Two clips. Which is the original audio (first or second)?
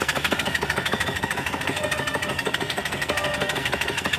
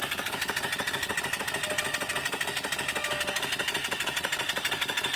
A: second